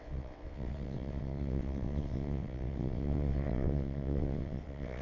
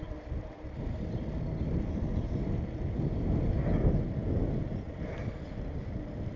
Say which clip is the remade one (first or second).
first